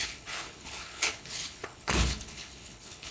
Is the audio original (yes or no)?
no